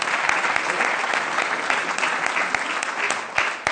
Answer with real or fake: real